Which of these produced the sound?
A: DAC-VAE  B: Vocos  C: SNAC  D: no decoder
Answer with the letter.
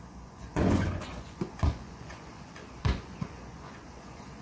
B